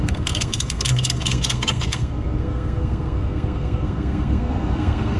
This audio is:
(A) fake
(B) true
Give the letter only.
A